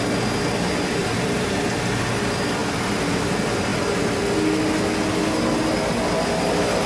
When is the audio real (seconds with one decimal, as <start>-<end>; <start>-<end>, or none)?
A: 0.0-1.0; 1.7-6.9